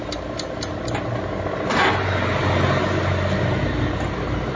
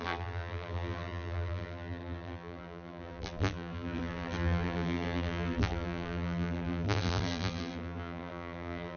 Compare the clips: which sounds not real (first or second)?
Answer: second